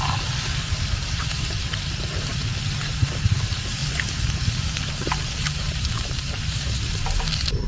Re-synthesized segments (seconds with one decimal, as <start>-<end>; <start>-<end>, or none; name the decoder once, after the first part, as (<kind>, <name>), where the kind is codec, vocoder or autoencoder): 0.0-3.8 (vocoder, BigVGAN v2); 4.7-7.7